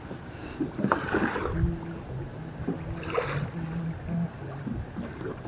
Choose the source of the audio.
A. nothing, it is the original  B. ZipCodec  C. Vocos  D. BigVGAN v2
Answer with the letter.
A